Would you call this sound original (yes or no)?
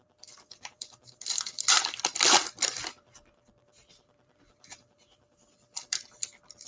no